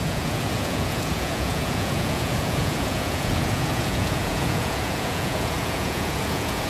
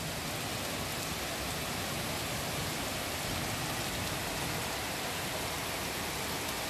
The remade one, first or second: first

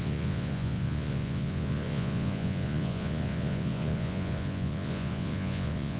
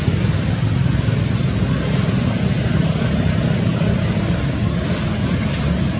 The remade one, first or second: first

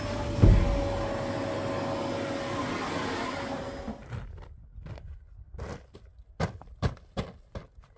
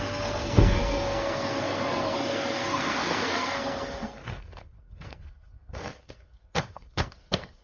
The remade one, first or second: second